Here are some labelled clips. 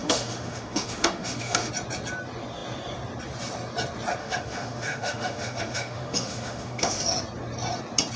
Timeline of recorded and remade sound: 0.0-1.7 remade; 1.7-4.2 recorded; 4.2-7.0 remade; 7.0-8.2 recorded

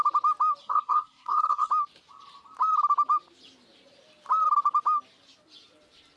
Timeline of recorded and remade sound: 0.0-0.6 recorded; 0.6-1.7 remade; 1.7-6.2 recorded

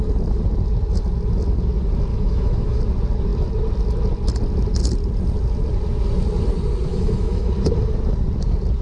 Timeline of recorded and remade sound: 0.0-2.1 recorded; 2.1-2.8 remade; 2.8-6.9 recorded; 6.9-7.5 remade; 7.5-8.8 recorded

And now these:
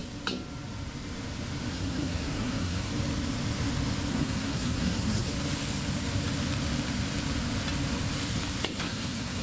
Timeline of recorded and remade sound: 0.0-1.7 recorded; 1.7-2.9 remade; 2.9-4.1 recorded; 4.1-5.3 remade; 5.3-8.8 recorded; 8.8-9.4 remade

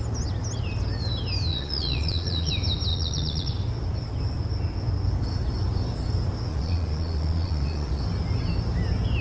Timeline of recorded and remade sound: 0.0-1.5 recorded; 1.5-2.5 remade; 2.5-2.9 recorded; 2.9-3.5 remade; 3.5-6.5 recorded; 6.5-8.0 remade; 8.0-9.2 recorded